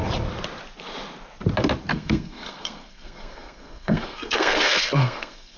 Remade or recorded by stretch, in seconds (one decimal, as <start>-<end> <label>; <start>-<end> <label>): 0.0-1.9 recorded; 1.9-5.6 remade